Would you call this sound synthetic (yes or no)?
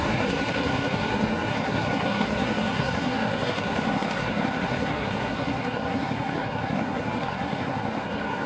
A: yes